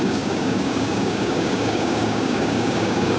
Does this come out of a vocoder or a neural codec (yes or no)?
yes